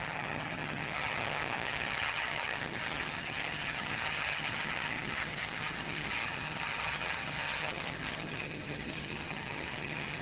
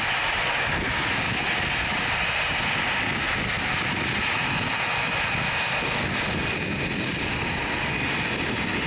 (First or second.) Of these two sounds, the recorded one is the second